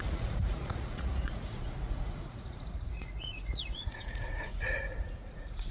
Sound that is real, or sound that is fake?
fake